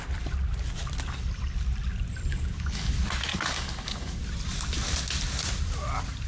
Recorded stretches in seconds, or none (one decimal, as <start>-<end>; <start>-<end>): 0.0-2.3; 2.9-3.3; 4.2-6.3